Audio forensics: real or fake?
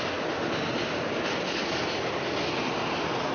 real